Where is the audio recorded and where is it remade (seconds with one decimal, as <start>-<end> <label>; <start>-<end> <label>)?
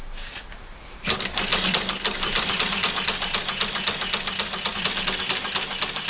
0.0-6.1 recorded